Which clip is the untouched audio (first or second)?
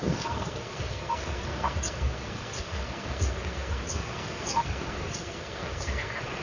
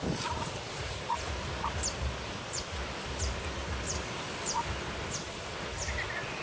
second